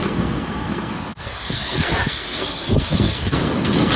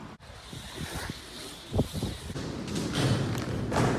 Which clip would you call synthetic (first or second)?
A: first